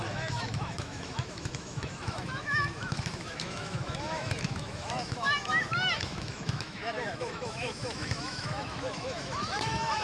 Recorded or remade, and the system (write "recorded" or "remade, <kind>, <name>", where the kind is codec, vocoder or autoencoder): remade, autoencoder, DAC-VAE